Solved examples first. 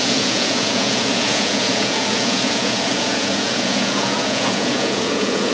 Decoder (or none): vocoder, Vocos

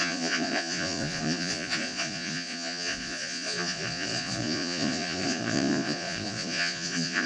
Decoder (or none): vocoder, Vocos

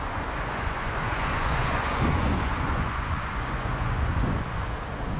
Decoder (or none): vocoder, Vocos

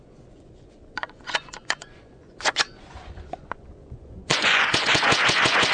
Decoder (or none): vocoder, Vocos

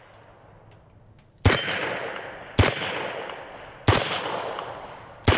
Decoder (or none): none